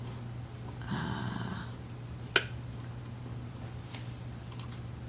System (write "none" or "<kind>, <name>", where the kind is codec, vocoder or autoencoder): none